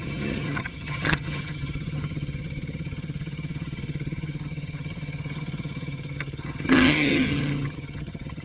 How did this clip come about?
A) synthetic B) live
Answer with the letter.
A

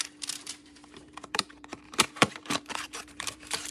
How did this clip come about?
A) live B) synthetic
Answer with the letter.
B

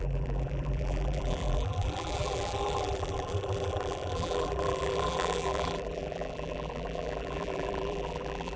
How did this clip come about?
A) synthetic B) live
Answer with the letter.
A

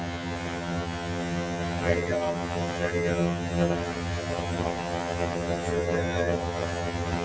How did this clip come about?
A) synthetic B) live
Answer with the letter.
A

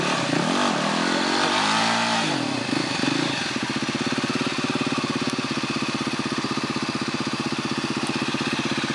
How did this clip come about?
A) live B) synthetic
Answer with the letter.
A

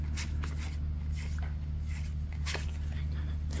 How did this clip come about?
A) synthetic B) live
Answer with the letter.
B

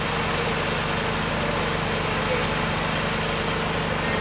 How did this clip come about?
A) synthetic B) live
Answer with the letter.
B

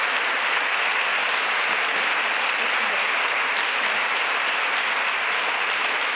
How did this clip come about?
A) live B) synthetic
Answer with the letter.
A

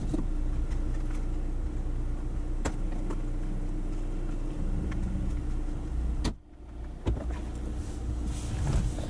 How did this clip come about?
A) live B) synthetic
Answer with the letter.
A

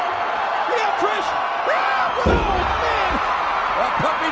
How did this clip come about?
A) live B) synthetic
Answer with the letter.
A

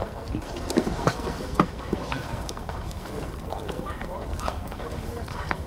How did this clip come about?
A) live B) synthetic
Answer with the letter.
B